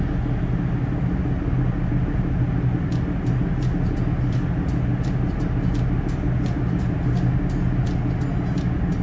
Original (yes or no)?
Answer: yes